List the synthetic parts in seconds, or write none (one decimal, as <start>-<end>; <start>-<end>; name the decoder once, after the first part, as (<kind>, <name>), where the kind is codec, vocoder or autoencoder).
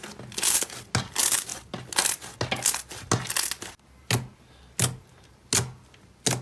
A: none